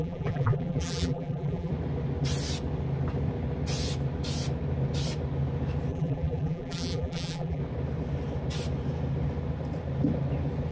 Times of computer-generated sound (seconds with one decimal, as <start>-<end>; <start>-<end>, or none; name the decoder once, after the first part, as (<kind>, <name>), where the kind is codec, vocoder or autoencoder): 0.0-1.7 (vocoder, BigVGAN v2); 5.9-7.6